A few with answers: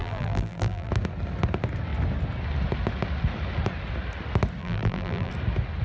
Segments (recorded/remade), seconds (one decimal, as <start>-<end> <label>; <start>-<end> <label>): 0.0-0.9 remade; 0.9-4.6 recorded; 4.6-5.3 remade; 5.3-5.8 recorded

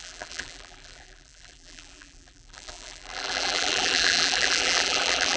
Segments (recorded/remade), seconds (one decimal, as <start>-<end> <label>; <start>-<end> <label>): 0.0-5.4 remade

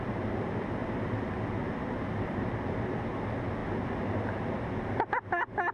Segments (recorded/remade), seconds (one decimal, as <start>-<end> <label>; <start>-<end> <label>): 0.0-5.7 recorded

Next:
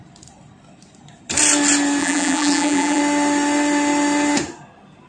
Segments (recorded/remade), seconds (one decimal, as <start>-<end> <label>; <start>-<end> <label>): 0.0-2.0 recorded; 2.0-3.0 remade; 3.0-5.1 recorded